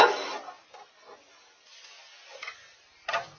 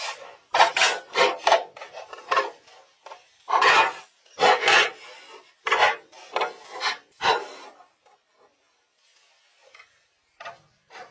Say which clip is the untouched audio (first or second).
first